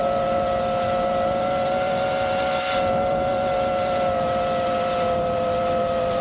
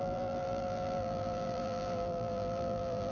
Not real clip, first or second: second